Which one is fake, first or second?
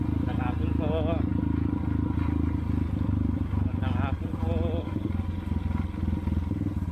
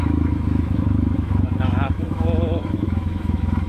second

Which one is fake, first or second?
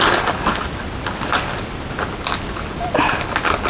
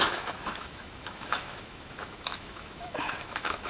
second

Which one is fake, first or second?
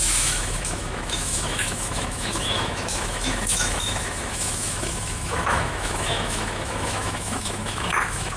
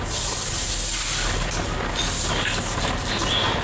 first